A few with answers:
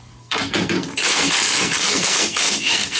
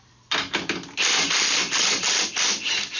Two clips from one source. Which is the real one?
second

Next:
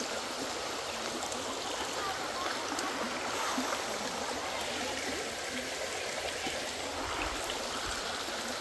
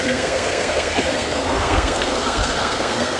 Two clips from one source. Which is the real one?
first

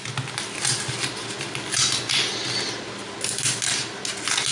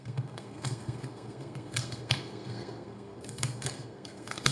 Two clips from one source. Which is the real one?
first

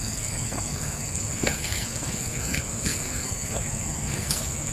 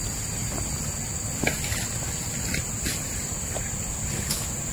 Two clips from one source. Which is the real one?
second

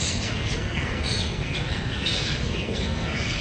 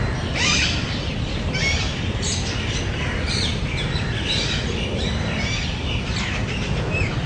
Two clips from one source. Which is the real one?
second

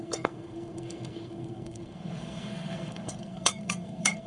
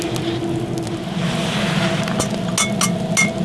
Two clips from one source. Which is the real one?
second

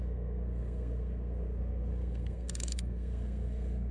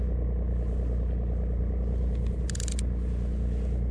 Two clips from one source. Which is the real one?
second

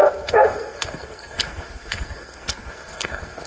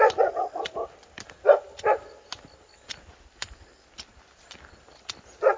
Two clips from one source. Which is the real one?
second